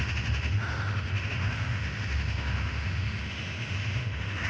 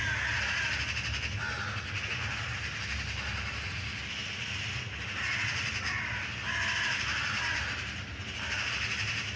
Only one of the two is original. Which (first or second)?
second